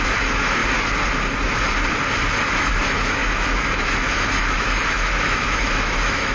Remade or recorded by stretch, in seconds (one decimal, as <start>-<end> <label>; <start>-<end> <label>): 0.0-0.6 remade; 0.6-2.5 recorded; 2.5-6.3 remade